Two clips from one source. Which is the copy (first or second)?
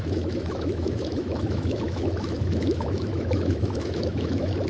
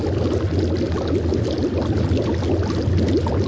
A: first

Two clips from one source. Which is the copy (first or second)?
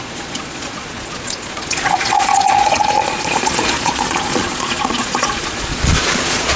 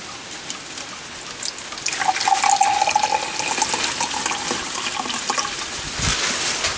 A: first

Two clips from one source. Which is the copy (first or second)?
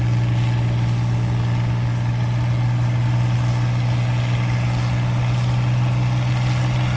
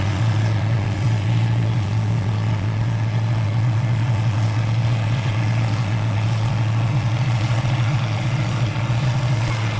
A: second